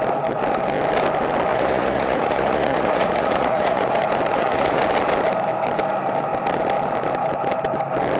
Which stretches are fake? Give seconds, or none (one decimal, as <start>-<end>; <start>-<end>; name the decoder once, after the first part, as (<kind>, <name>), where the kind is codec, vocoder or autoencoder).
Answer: 1.5-3.9 (vocoder, Vocos); 4.3-4.8